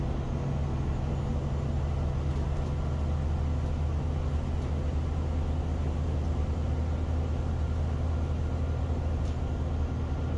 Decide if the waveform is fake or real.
real